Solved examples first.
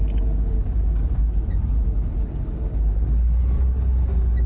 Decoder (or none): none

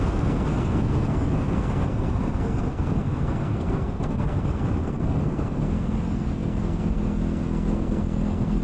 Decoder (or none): codec, SNAC